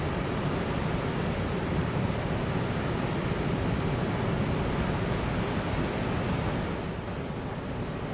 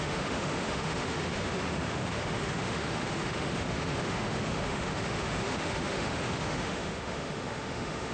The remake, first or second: second